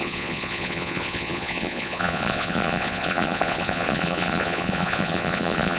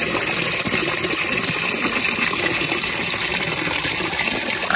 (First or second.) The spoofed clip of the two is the first